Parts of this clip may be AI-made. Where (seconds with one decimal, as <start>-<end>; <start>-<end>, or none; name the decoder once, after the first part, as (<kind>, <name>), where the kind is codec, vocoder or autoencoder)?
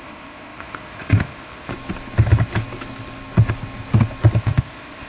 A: 0.0-1.7 (codec, ZipCodec); 4.4-5.1